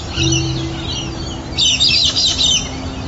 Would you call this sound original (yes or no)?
yes